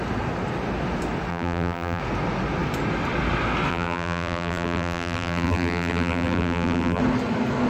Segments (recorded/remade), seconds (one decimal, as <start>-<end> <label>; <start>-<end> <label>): 0.0-1.3 recorded; 1.3-2.0 remade; 2.0-3.7 recorded; 3.7-7.0 remade; 7.0-7.7 recorded